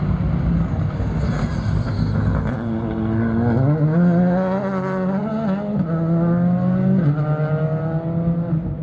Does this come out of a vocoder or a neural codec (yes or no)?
no